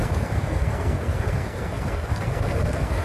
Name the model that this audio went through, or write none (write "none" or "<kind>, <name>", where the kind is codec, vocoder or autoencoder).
codec, SNAC